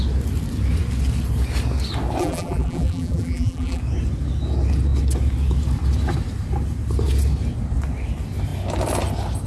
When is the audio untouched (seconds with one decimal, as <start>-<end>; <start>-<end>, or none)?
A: 0.0-2.2; 3.8-9.5